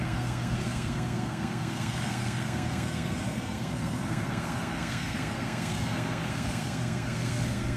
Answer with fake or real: fake